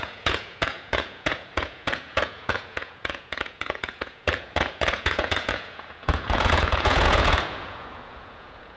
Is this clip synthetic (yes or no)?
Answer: yes